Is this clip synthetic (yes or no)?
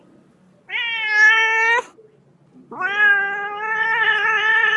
no